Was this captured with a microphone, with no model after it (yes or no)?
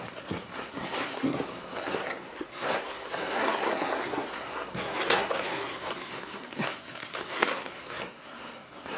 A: no